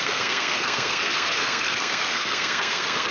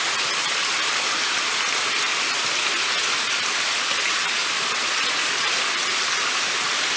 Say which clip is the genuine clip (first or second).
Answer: second